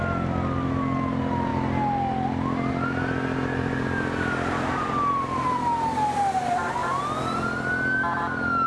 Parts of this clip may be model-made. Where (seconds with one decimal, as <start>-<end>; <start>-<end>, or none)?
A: none